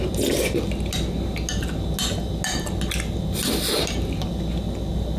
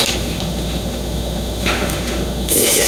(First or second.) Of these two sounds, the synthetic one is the second